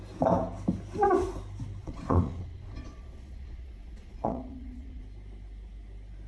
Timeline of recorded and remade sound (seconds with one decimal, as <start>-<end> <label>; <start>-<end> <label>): 0.0-1.8 recorded; 1.8-5.0 remade; 5.0-6.3 recorded